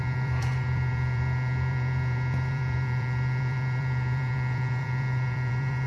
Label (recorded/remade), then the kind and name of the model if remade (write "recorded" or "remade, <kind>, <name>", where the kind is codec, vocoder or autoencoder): remade, vocoder, BigVGAN v2